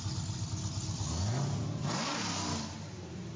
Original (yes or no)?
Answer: yes